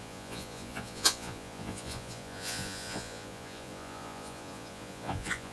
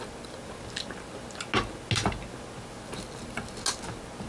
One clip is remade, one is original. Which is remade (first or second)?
first